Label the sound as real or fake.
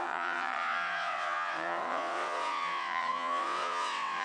fake